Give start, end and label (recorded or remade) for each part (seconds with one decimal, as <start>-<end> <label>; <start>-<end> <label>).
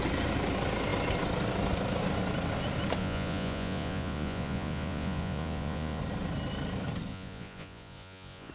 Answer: 0.0-3.0 recorded; 3.0-6.0 remade; 6.0-7.1 recorded; 7.1-8.5 remade